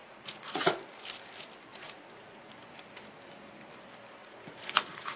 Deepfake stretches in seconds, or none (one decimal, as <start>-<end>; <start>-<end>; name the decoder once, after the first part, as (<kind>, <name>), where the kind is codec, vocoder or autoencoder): 0.0-1.0 (vocoder, Vocos); 1.7-2.5; 4.2-5.2